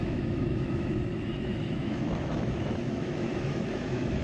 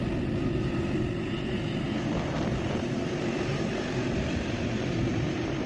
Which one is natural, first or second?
second